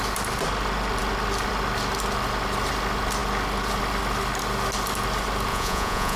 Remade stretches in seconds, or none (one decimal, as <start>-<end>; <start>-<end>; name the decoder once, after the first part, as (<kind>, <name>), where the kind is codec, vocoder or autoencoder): 5.5-6.2 (vocoder, Vocos)